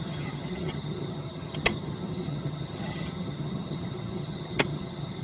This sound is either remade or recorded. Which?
remade